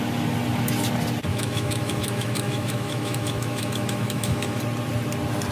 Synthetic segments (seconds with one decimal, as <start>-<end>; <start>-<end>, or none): 1.3-4.6